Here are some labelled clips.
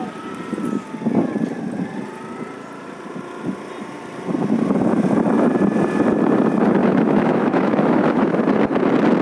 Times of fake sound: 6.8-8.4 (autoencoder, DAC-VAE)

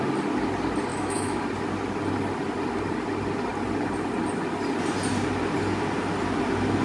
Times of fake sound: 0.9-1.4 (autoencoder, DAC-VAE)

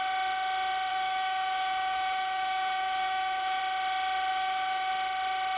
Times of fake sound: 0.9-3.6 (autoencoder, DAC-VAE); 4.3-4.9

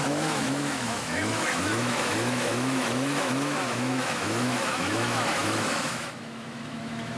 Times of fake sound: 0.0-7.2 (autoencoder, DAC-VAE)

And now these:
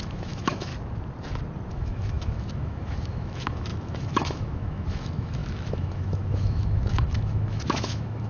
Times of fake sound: 0.0-0.7 (autoencoder, DAC-VAE); 1.7-8.3

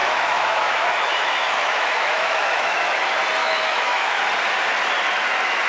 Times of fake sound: 0.0-3.0 (autoencoder, DAC-VAE); 3.4-4.2